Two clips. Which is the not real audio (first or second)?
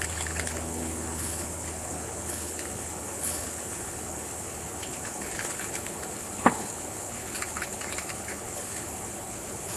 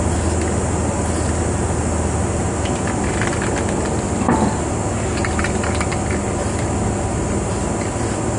first